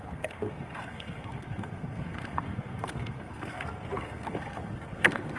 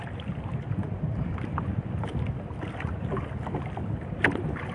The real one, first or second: second